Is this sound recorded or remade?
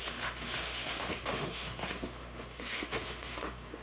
remade